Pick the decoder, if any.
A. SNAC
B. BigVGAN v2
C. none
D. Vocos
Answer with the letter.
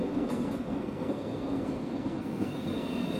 A